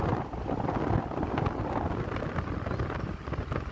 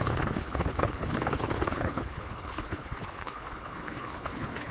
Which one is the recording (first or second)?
first